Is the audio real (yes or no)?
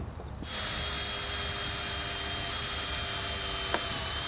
yes